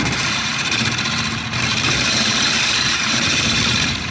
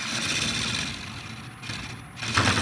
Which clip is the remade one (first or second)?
first